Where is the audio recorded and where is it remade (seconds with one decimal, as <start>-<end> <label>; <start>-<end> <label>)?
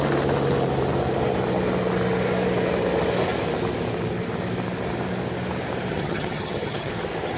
0.0-5.9 recorded; 5.9-6.9 remade; 6.9-7.4 recorded